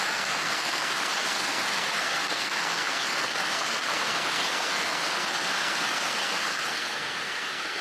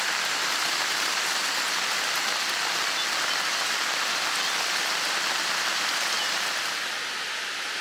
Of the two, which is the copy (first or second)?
first